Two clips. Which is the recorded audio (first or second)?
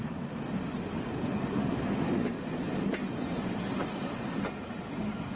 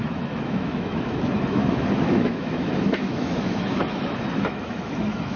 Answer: first